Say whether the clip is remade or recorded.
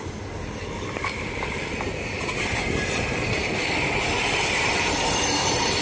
recorded